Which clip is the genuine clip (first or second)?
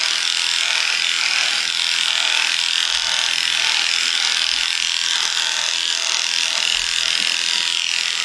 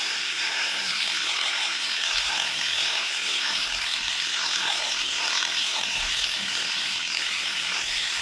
first